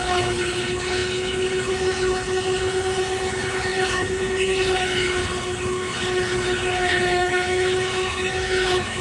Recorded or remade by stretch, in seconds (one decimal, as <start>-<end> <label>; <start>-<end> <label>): 0.0-9.0 remade